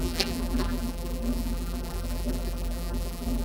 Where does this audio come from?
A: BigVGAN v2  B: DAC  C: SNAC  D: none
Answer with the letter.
A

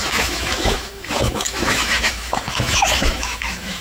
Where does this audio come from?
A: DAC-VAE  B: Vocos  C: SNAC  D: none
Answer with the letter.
A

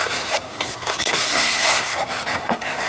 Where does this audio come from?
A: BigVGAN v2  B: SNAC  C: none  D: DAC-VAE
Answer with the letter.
B